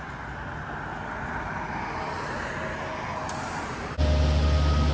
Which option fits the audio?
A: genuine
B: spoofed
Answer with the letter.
A